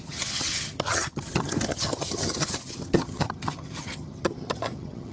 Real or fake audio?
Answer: fake